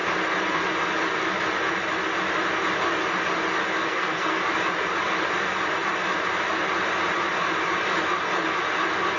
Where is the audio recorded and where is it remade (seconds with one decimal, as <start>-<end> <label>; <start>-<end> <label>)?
0.0-3.8 recorded; 3.8-4.4 remade; 4.4-9.2 recorded